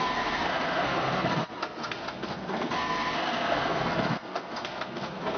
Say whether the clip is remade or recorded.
remade